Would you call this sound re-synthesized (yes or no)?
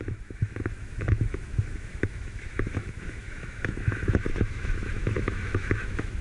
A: yes